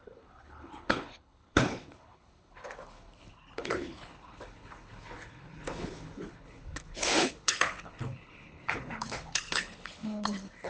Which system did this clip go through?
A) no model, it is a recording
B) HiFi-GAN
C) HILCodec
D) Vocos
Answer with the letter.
C